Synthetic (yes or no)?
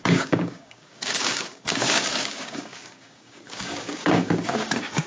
yes